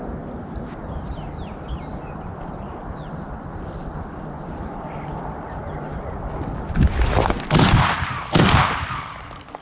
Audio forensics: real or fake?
real